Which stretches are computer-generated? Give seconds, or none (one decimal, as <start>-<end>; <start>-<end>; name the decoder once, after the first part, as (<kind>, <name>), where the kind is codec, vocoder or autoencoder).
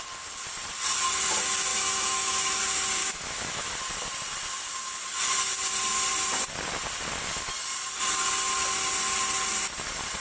1.7-2.6 (autoencoder, DAC-VAE); 3.0-3.7